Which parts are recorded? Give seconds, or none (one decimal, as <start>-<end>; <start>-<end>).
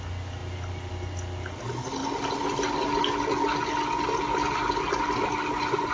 0.0-5.9